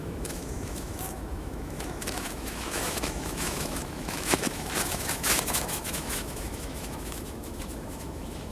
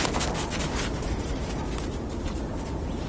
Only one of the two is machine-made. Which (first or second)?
first